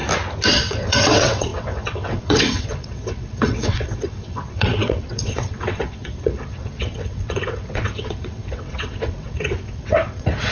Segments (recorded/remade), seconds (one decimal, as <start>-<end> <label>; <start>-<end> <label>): 0.0-0.5 recorded; 0.5-10.5 remade